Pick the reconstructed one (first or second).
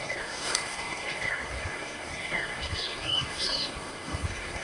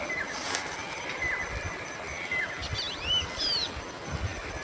first